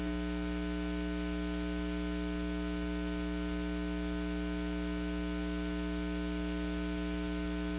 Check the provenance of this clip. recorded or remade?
recorded